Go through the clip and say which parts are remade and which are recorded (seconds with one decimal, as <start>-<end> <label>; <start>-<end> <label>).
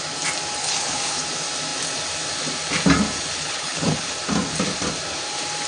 0.0-0.6 recorded; 0.6-1.2 remade; 1.2-3.3 recorded; 3.3-4.1 remade; 4.1-5.7 recorded